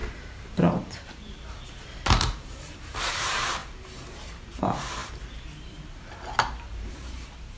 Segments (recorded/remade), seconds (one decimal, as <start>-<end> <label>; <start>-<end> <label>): 0.0-7.6 remade